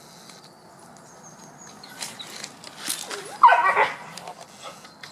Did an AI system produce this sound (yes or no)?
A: no